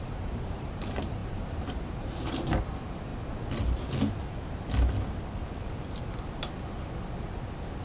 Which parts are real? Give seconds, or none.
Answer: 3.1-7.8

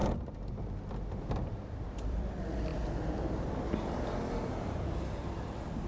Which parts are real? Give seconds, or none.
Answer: 0.0-1.1; 2.7-3.3

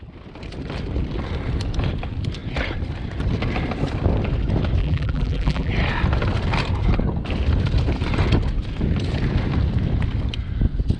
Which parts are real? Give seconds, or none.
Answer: 0.0-4.8; 5.7-11.0

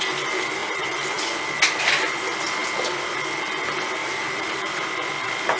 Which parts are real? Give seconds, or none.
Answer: 0.0-0.6; 1.5-4.0; 4.7-5.6

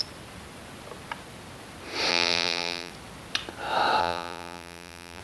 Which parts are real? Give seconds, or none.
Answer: 0.0-2.1; 2.9-4.0

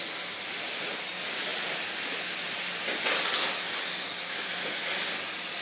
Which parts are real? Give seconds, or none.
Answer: 0.0-5.6

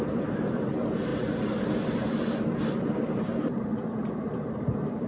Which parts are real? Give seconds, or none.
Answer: 1.1-2.8; 3.7-4.6